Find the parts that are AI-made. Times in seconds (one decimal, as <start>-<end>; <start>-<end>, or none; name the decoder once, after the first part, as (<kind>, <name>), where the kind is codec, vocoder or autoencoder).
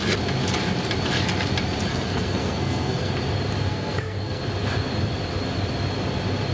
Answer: 1.9-3.1 (codec, SNAC); 3.7-4.4